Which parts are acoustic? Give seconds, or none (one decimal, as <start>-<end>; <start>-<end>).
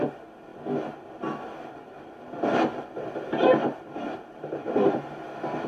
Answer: 0.0-0.5; 1.1-3.6; 5.0-5.7